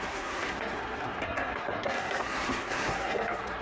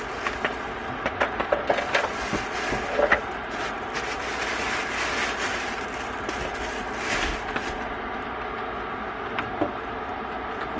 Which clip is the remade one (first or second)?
first